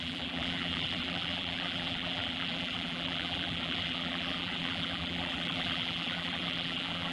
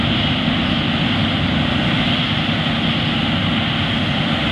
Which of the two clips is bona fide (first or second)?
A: second